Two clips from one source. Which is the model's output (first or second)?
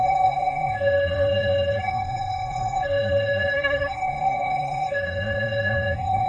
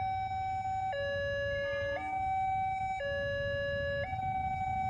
first